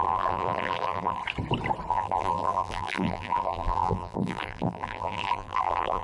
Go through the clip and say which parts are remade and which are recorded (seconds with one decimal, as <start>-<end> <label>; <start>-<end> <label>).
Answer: 0.0-1.2 remade; 1.2-1.9 recorded; 1.9-6.0 remade

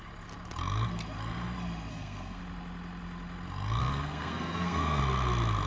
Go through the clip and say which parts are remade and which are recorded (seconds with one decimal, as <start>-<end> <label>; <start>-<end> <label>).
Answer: 0.0-1.9 recorded; 1.9-2.4 remade; 2.4-3.8 recorded; 3.8-5.0 remade; 5.0-5.7 recorded

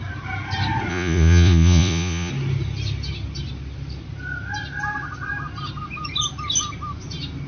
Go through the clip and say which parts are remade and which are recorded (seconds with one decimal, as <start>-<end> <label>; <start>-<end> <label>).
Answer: 0.0-0.9 recorded; 0.9-2.3 remade; 2.3-7.5 recorded

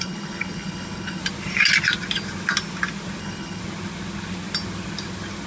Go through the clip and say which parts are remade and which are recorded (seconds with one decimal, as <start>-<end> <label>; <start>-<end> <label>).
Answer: 0.0-1.2 remade; 1.2-3.2 recorded; 3.2-3.6 remade; 3.6-5.5 recorded

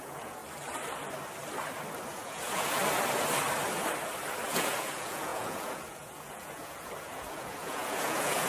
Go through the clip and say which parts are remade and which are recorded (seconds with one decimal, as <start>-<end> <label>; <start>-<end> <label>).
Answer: 0.0-0.4 remade; 0.4-2.1 recorded; 2.1-2.8 remade; 2.8-4.5 recorded; 4.5-8.5 remade

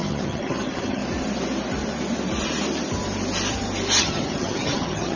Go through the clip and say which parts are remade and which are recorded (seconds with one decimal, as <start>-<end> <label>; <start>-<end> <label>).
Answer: 0.0-1.0 remade; 1.0-4.0 recorded; 4.0-5.2 remade